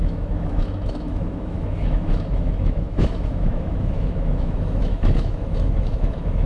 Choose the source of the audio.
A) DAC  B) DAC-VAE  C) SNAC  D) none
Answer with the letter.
B